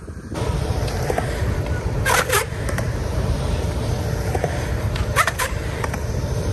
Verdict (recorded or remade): remade